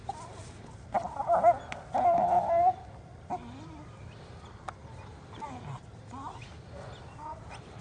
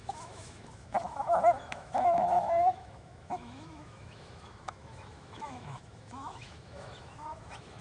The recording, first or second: first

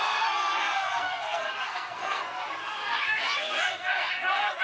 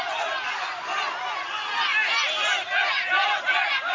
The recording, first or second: second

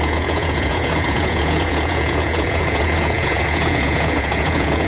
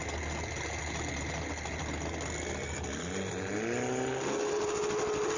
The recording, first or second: second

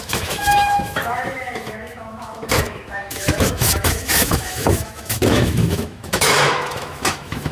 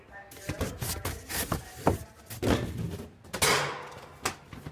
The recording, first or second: second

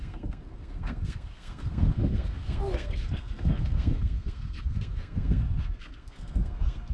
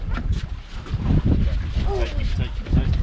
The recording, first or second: second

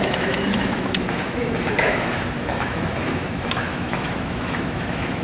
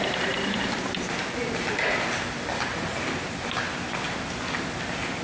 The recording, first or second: second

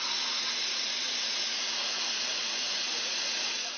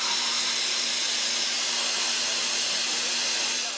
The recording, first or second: second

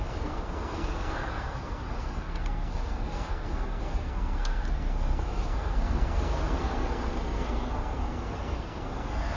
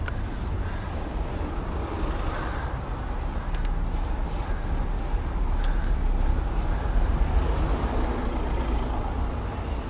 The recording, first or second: second